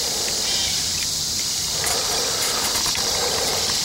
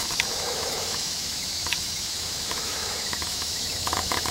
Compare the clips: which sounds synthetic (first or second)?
second